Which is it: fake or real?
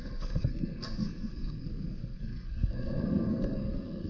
fake